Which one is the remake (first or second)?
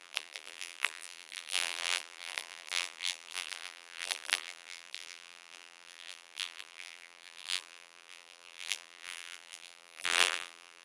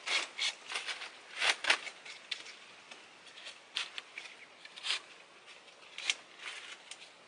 first